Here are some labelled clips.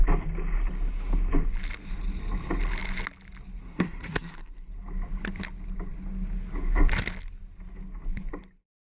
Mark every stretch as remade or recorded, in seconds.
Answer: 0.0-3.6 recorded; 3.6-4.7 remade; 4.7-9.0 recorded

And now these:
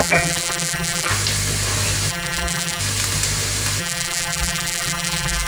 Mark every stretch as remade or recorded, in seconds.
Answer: 0.0-1.1 remade; 1.1-2.1 recorded; 2.1-2.8 remade; 2.8-3.8 recorded; 3.8-5.5 remade

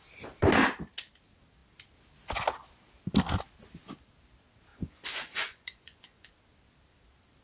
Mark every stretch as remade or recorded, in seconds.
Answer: 0.0-4.7 recorded; 4.7-6.3 remade; 6.3-7.4 recorded

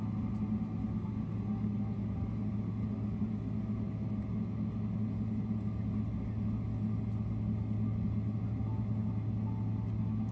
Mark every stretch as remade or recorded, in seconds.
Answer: 0.0-10.3 recorded

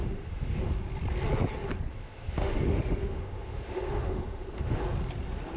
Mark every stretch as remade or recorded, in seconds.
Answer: 0.0-0.7 remade; 0.7-1.9 recorded; 1.9-4.8 remade; 4.8-5.6 recorded

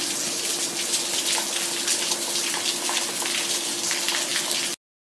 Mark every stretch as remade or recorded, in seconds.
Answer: 0.0-5.2 recorded

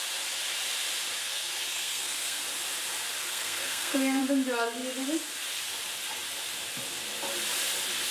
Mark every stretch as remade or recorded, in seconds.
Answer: 0.0-1.2 recorded; 1.2-2.4 remade; 2.4-3.2 recorded; 3.2-4.2 remade; 4.2-8.1 recorded